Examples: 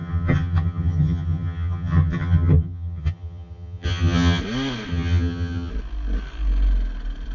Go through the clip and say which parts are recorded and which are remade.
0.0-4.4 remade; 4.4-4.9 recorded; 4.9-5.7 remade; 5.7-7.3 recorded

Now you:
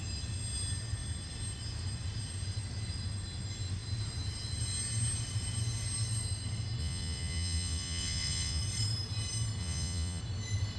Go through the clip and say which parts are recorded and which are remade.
0.0-6.8 recorded; 6.8-8.6 remade; 8.6-9.6 recorded; 9.6-10.2 remade; 10.2-10.8 recorded

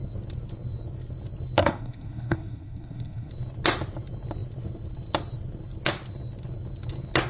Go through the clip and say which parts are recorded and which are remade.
0.0-1.6 recorded; 1.6-3.3 remade; 3.3-7.3 recorded